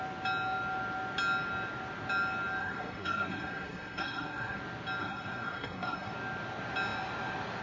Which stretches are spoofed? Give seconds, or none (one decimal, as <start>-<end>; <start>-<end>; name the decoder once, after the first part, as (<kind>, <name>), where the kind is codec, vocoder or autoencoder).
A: 2.6-4.6 (codec, SNAC); 5.0-6.1